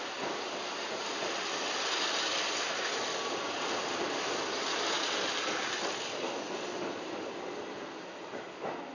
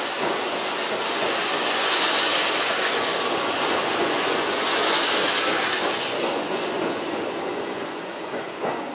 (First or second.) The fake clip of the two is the second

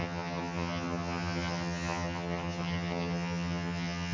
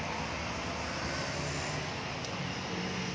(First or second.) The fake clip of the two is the first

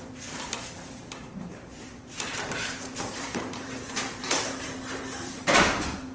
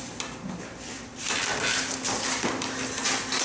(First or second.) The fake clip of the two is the first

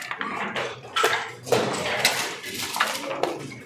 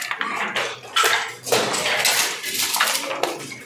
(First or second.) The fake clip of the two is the first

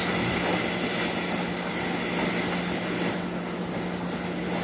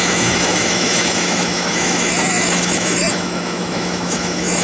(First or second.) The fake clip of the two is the second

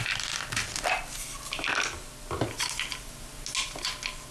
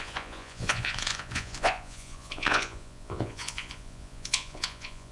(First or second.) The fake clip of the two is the second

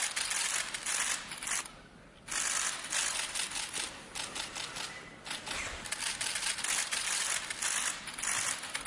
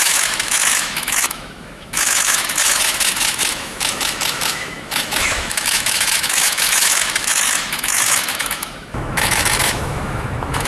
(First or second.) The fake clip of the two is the second